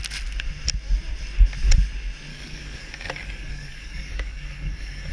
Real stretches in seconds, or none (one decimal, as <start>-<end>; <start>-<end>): 0.0-2.3